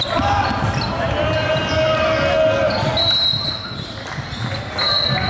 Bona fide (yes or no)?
yes